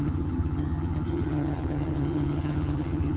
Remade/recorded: remade